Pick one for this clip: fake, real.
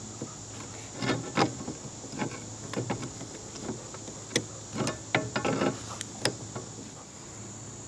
real